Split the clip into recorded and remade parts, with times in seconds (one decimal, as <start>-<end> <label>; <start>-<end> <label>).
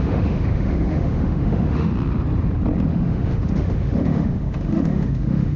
0.0-1.9 remade; 1.9-2.9 recorded; 2.9-5.6 remade